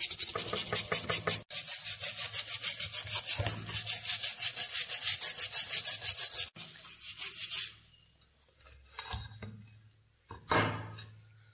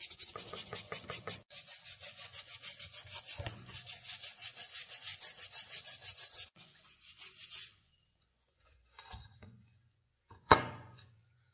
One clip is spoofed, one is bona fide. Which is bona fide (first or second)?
first